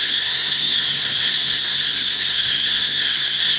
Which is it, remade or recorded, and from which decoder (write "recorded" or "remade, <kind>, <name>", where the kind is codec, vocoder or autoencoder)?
remade, codec, SNAC